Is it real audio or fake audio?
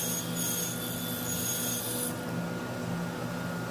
real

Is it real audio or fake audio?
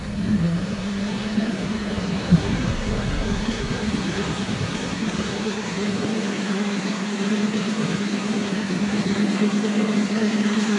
fake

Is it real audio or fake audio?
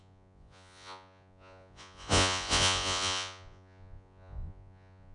fake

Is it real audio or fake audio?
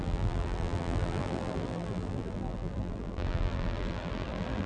fake